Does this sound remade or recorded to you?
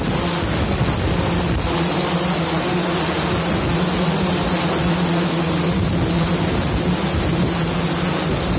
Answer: recorded